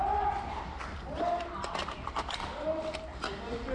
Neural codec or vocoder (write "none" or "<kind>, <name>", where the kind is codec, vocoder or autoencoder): none